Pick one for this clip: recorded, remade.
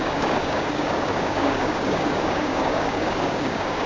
remade